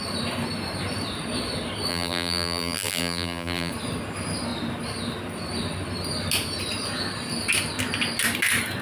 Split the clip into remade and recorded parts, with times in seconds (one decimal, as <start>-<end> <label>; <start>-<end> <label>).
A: 0.0-1.9 recorded; 1.9-3.7 remade; 3.7-8.8 recorded